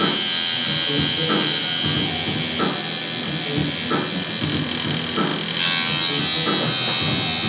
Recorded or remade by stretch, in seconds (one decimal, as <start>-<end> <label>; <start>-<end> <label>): 0.0-7.5 recorded